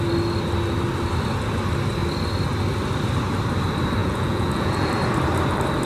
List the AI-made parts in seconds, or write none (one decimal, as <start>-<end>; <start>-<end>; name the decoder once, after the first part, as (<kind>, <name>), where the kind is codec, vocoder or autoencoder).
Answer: 4.0-4.9 (vocoder, Vocos)